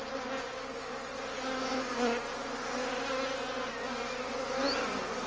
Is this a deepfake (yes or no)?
no